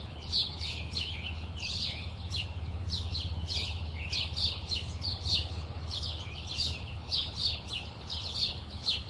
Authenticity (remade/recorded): remade